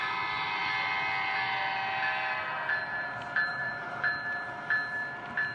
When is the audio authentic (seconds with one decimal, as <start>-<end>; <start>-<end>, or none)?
0.0-3.5; 4.1-5.5